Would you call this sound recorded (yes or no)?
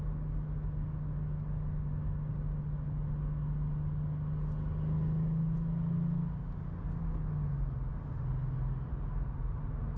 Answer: yes